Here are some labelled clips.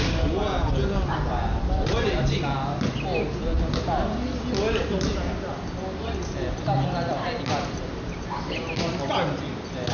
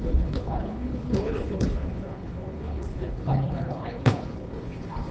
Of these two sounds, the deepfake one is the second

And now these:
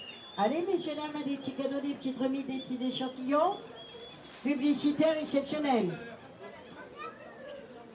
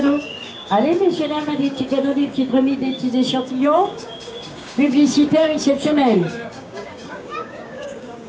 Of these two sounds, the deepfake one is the second